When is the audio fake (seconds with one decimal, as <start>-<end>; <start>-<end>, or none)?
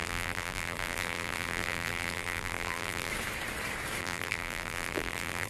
0.0-3.1; 4.0-5.5